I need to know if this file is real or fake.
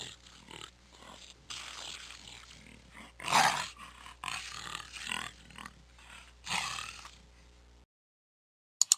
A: real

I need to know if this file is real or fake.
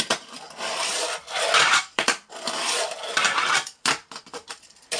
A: fake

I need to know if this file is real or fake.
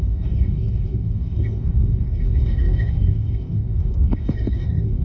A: fake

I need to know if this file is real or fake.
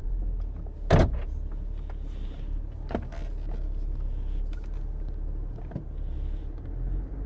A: real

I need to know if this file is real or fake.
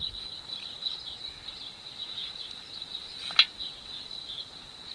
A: real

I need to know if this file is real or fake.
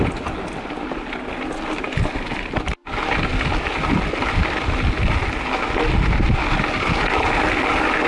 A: real